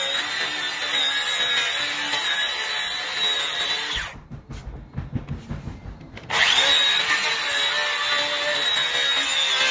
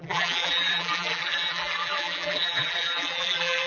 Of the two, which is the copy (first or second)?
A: second